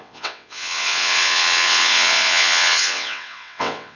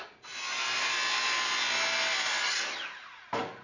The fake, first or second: first